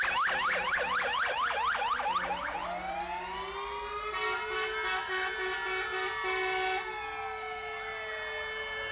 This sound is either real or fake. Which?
real